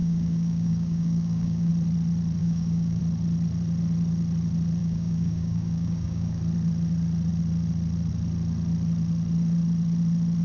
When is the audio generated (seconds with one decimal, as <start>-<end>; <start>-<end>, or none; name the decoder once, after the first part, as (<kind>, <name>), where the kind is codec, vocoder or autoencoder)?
0.0-1.7 (codec, DAC); 2.4-3.0; 4.8-6.4